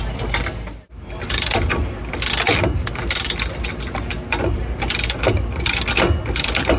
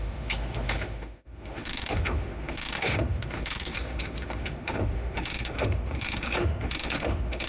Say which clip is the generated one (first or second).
second